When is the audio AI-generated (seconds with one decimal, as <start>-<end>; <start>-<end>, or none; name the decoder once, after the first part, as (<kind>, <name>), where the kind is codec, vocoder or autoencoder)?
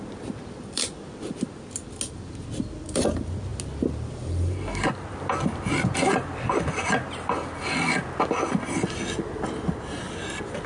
none